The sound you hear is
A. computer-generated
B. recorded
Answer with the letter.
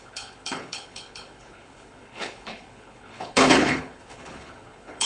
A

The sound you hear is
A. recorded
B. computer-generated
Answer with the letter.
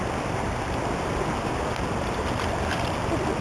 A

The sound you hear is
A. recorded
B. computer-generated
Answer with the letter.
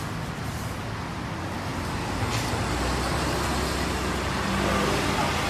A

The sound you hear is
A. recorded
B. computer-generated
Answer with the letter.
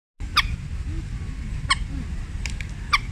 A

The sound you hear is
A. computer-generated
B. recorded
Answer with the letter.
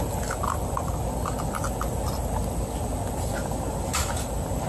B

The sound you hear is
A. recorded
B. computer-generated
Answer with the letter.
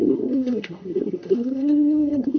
B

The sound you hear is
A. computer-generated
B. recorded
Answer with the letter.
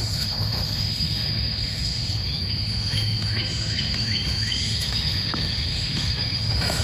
A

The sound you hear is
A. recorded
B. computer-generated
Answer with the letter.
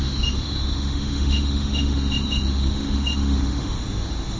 B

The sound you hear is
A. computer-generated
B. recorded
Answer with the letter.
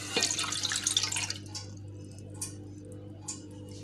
B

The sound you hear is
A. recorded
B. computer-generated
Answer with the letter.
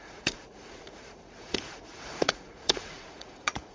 B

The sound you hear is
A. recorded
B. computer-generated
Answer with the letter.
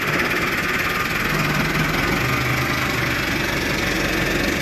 A